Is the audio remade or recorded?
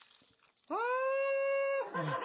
recorded